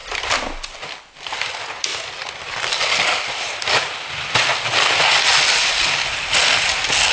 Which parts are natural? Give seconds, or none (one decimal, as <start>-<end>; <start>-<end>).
0.0-7.1